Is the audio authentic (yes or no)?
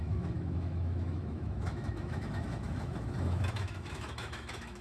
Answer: no